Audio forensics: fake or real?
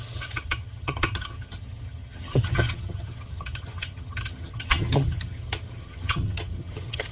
fake